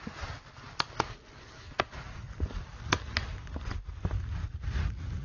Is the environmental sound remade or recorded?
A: recorded